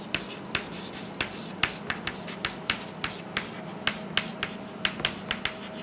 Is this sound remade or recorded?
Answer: recorded